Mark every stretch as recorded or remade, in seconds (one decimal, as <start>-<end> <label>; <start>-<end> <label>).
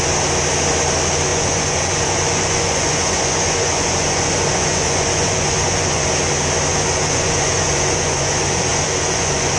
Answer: 0.0-1.3 recorded; 1.3-6.1 remade; 6.1-6.7 recorded; 6.7-9.6 remade